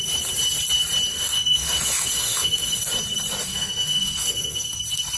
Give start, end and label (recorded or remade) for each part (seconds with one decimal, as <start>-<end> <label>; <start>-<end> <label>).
0.0-1.1 recorded; 1.1-2.8 remade; 2.8-3.4 recorded; 3.4-4.8 remade; 4.8-5.2 recorded